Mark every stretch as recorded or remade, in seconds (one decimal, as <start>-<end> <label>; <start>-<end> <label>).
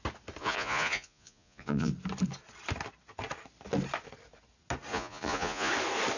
0.0-0.4 recorded; 0.4-1.9 remade; 1.9-4.9 recorded; 4.9-5.7 remade; 5.7-6.2 recorded